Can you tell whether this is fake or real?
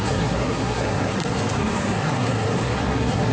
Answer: fake